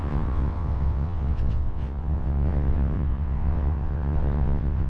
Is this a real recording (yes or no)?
no